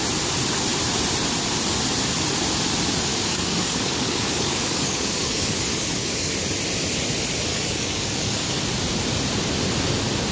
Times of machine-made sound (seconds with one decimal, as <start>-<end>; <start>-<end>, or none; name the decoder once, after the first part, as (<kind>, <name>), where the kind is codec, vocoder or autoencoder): 3.1-6.3 (codec, DAC); 7.5-8.6